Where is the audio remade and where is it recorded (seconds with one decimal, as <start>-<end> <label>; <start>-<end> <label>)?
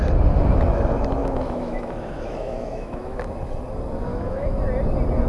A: 0.0-1.2 recorded; 1.2-3.2 remade; 3.2-4.1 recorded; 4.1-4.6 remade; 4.6-5.3 recorded